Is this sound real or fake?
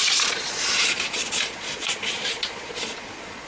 fake